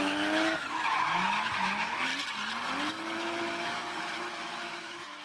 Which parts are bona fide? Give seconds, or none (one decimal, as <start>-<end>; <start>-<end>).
2.1-2.9